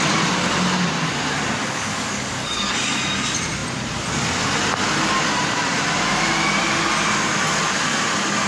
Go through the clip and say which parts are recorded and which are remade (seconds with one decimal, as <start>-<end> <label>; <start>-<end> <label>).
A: 0.0-1.6 recorded; 1.6-2.7 remade; 2.7-8.5 recorded